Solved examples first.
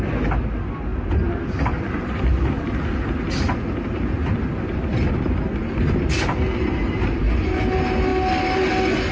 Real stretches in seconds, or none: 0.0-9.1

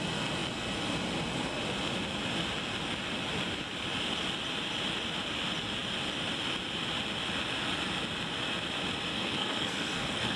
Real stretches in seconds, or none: 0.0-9.1

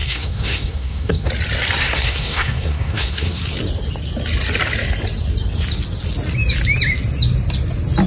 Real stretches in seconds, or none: 1.3-1.8; 3.4-8.1

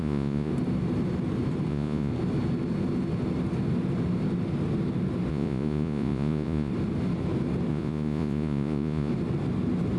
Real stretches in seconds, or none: 0.5-1.7; 2.1-5.3; 6.7-7.7; 9.1-10.0

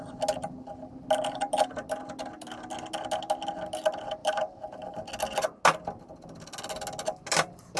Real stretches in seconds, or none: 0.0-4.2; 5.1-7.8

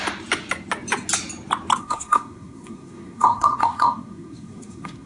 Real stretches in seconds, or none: 0.0-1.8